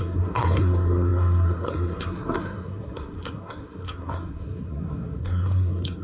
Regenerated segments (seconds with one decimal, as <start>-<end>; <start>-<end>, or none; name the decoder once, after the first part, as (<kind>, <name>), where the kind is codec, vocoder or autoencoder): 0.0-6.0 (codec, SNAC)